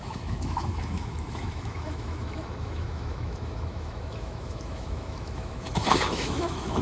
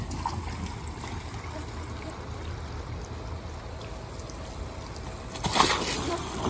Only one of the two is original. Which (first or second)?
second